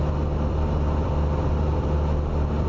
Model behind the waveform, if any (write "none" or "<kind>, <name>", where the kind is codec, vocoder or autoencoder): vocoder, BigVGAN v2